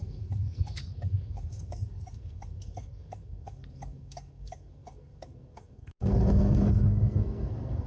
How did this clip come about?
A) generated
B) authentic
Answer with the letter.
A